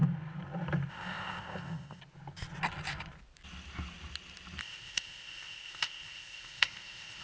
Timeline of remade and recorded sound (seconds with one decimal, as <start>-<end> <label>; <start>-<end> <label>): 0.0-0.9 recorded; 0.9-2.0 remade; 2.0-4.6 recorded; 4.6-7.2 remade